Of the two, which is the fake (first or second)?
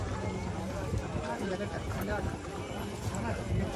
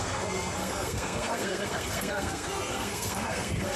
second